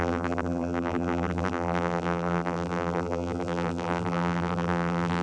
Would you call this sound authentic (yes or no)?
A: no